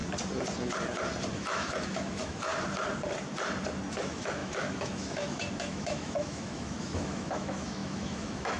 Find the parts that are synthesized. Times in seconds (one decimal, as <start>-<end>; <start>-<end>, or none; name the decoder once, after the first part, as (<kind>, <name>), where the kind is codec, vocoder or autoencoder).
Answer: 1.3-2.5 (autoencoder, DAC-VAE); 3.9-8.6